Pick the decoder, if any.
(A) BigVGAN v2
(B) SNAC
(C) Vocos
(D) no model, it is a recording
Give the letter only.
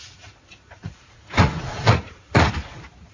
C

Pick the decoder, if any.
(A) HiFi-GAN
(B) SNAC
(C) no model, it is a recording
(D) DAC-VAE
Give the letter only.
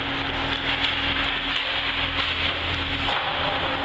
C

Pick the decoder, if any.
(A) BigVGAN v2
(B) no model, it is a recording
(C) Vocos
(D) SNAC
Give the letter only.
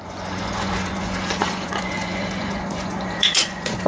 C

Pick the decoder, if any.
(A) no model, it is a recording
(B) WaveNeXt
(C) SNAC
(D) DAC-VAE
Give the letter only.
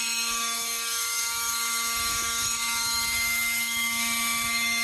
D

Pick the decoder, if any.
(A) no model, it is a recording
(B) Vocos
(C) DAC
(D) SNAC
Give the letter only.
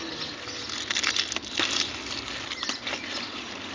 A